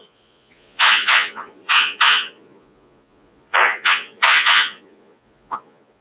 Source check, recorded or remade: remade